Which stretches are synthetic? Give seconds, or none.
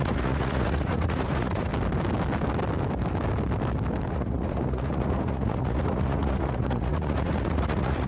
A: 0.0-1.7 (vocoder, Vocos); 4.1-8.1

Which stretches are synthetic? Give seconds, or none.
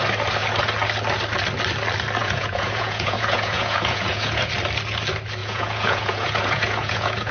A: 2.2-4.5 (vocoder, Vocos); 5.4-7.3